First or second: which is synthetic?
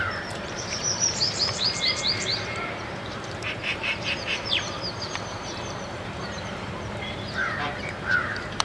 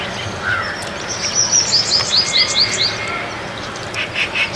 first